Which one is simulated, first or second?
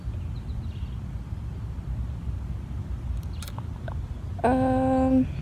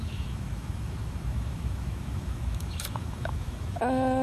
second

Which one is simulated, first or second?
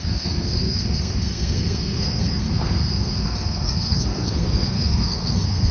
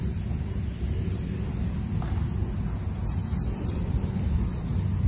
first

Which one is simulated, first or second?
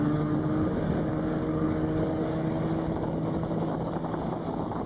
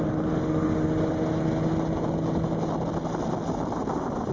first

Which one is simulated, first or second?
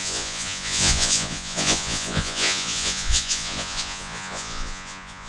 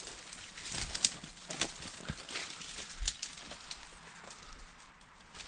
first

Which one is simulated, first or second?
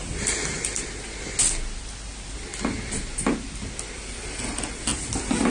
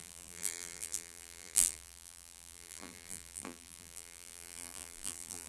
second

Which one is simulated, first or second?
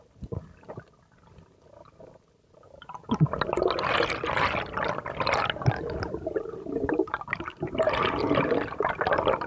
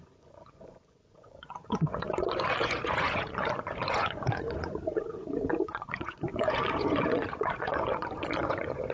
second